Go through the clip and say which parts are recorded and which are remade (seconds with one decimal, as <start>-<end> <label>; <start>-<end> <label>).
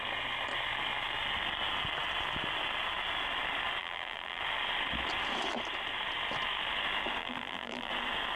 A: 0.0-3.8 recorded; 3.8-4.4 remade; 4.4-7.2 recorded; 7.2-7.9 remade; 7.9-8.4 recorded